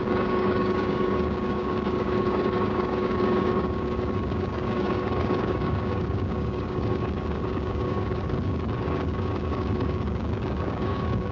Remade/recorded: remade